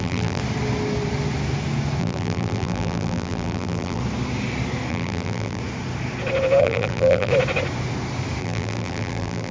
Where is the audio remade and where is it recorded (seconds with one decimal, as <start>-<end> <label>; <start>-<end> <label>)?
0.0-0.4 remade; 0.4-2.0 recorded; 2.0-4.0 remade; 4.0-4.9 recorded; 4.9-5.6 remade; 5.6-6.6 recorded; 6.6-7.3 remade; 7.3-8.4 recorded; 8.4-9.5 remade